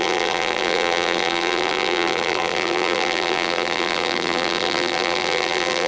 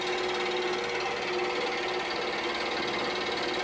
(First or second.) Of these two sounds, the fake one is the first